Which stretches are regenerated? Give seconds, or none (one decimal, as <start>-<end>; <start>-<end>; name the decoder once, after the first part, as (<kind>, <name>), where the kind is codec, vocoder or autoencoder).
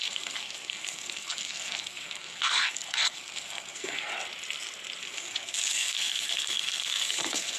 0.0-4.1 (codec, SNAC); 5.0-7.6